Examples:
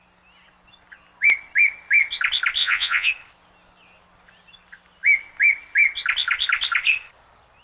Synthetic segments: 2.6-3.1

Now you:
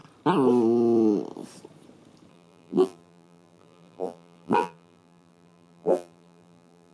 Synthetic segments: 2.3-6.9

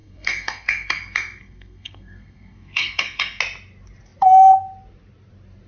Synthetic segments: 0.0-3.4

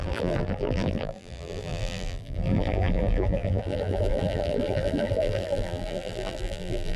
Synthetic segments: 0.0-7.0

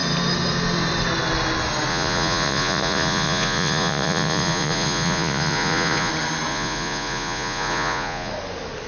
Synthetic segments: 1.9-6.1; 6.5-8.3

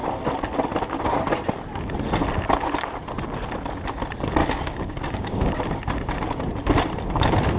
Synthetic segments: 4.4-5.6